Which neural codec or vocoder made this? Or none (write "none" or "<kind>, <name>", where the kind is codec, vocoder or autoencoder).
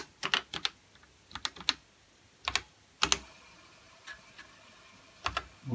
none